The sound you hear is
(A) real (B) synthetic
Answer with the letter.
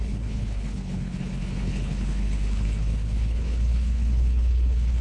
B